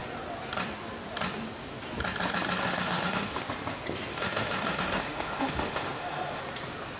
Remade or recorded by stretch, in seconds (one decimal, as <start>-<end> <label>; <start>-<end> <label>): 0.0-2.6 recorded; 2.6-3.4 remade; 3.4-4.1 recorded; 4.1-6.4 remade; 6.4-7.0 recorded